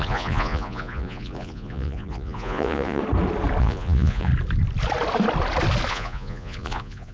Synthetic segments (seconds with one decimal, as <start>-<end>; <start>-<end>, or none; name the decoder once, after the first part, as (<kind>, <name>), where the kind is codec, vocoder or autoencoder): 0.0-3.0 (vocoder, Vocos); 3.6-4.3; 5.9-7.1

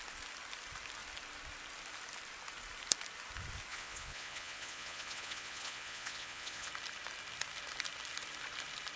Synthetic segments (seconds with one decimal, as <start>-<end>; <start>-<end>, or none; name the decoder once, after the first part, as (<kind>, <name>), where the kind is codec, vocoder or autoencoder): 3.7-6.7 (vocoder, Vocos)